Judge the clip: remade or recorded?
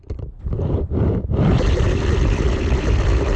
remade